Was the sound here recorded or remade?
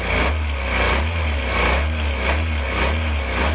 recorded